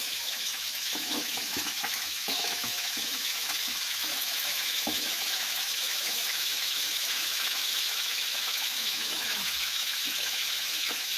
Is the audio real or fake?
fake